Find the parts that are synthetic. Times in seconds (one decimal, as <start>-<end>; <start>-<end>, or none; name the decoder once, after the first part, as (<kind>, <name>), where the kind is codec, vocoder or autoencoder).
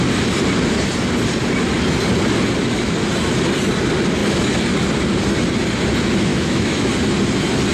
6.3-6.9 (autoencoder, DAC-VAE)